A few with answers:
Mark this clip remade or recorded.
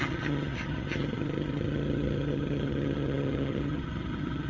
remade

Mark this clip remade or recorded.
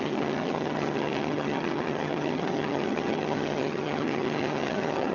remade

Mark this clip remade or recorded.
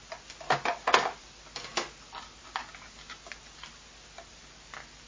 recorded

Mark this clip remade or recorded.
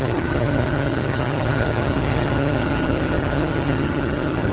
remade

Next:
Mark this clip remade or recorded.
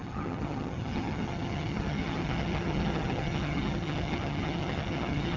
remade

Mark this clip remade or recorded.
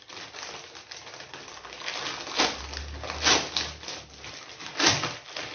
recorded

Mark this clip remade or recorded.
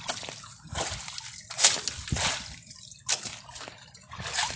recorded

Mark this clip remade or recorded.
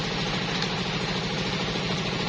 recorded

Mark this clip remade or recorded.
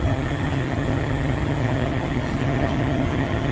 remade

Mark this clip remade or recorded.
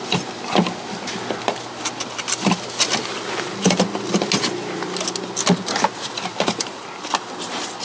recorded